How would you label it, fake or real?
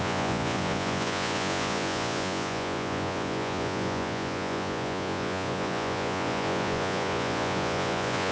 fake